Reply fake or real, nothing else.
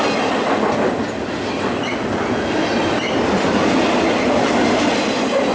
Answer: real